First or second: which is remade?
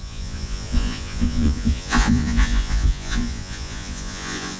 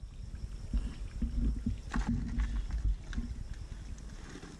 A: first